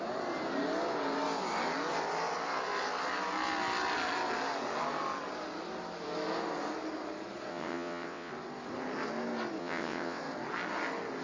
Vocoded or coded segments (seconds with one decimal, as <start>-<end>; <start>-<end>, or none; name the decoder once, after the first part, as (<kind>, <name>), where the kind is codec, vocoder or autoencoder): 7.5-8.3 (vocoder, WaveNeXt); 9.6-10.2